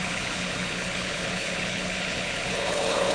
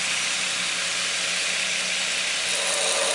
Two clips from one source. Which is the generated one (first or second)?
first